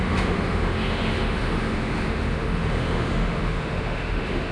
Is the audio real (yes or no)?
no